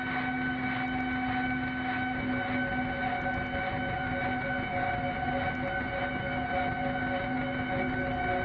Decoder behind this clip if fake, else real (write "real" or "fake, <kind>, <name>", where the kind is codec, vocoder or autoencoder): real